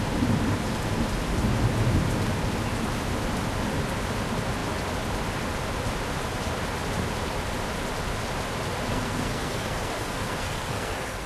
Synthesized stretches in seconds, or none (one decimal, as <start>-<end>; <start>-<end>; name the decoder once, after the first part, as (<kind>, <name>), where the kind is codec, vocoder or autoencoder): 8.9-11.3 (codec, SNAC)